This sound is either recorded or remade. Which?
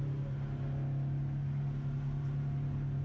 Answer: recorded